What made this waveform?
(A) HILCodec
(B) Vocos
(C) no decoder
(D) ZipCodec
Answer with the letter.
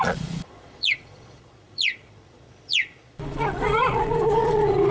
B